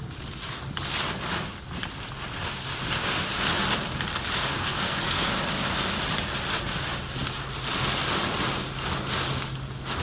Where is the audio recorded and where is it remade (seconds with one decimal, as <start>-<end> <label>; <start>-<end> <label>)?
0.0-4.5 recorded; 4.5-5.3 remade; 5.3-10.0 recorded